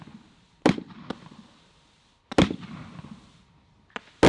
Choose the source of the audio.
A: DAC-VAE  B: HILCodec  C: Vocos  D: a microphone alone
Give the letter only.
D